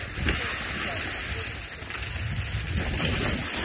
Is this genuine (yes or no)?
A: yes